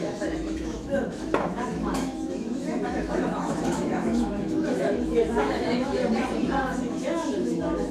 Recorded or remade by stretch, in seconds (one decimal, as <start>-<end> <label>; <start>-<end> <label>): 0.0-6.0 remade; 6.0-6.6 recorded; 6.6-7.9 remade